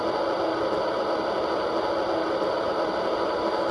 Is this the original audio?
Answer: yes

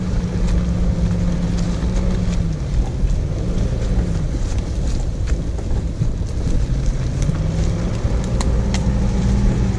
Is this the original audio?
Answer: yes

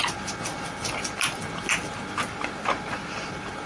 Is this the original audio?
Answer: yes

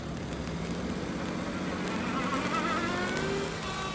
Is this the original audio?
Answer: yes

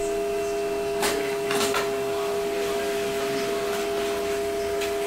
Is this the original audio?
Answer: yes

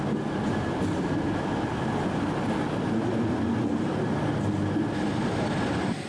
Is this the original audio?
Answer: yes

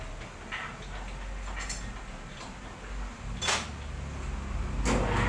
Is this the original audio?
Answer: yes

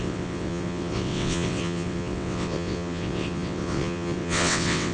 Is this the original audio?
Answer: no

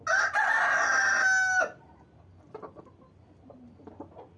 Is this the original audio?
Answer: yes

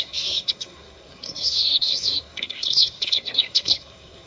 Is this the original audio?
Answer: no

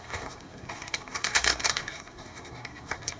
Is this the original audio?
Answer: no